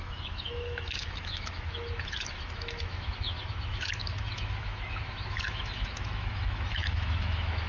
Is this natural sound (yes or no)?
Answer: no